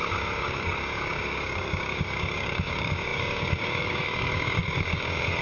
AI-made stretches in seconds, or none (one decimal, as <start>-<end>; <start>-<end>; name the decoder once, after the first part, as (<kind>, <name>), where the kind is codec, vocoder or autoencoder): 0.0-5.4 (codec, DAC)